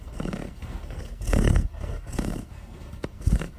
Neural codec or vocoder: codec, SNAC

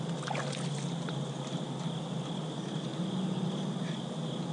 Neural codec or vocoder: none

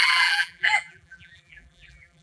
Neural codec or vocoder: vocoder, BigVGAN v2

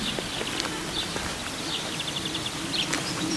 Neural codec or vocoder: vocoder, BigVGAN v2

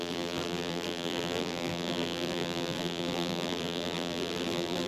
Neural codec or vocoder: vocoder, BigVGAN v2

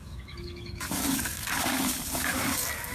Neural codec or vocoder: codec, DAC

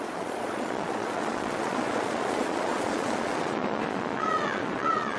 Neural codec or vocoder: vocoder, Vocos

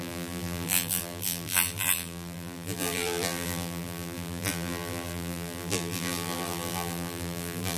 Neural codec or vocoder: vocoder, BigVGAN v2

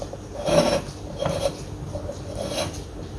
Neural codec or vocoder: none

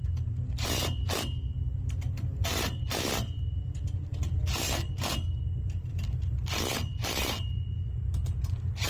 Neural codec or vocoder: none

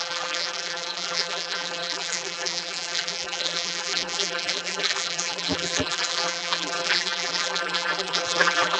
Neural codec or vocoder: vocoder, BigVGAN v2